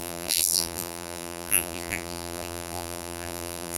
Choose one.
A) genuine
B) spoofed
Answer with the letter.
B